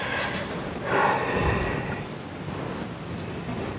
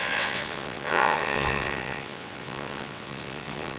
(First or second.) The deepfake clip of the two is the second